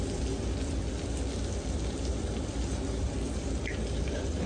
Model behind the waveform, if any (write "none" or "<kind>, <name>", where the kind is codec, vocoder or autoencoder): vocoder, BigVGAN v2